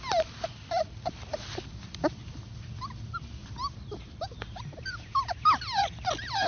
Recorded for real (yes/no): no